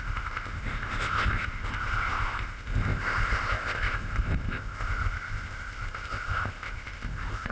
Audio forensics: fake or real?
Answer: fake